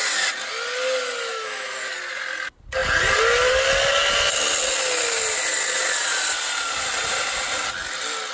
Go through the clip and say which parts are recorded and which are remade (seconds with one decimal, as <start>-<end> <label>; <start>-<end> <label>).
0.0-1.3 recorded; 1.3-1.9 remade; 1.9-8.3 recorded